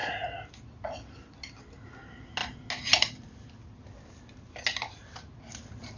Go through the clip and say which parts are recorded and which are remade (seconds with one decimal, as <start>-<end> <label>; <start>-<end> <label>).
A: 0.0-6.0 recorded